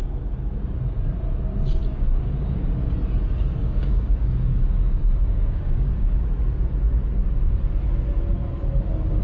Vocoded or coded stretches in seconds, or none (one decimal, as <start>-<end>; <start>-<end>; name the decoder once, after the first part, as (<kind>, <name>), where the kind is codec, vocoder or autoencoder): 1.9-2.7 (codec, DAC); 3.6-6.3